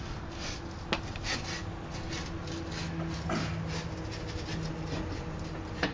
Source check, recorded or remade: recorded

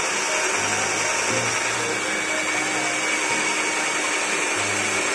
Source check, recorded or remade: recorded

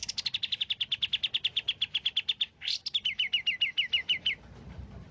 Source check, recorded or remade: recorded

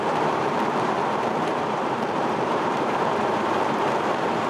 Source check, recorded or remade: remade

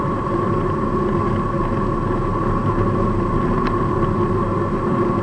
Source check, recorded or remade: recorded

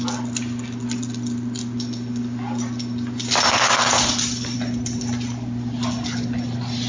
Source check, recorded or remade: recorded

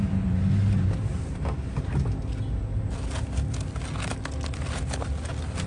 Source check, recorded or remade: recorded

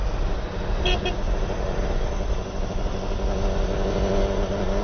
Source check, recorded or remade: recorded